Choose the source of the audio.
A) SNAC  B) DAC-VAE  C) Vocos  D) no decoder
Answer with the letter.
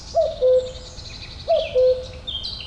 D